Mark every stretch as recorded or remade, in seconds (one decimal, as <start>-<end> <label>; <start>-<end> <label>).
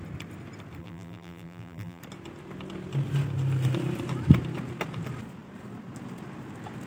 0.0-0.8 recorded; 0.8-2.0 remade; 2.0-6.9 recorded